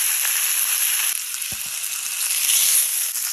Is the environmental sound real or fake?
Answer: real